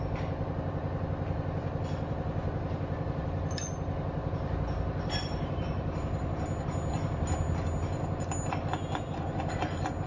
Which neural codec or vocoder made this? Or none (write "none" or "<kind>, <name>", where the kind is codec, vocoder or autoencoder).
none